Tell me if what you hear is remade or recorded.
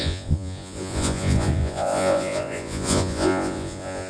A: remade